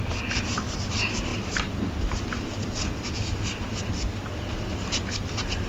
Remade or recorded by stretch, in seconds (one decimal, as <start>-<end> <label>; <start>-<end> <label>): 0.0-5.7 recorded